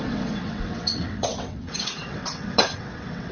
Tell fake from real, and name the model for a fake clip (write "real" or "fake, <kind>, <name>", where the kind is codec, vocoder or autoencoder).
fake, vocoder, WaveNeXt